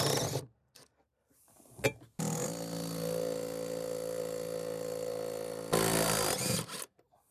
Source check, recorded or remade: recorded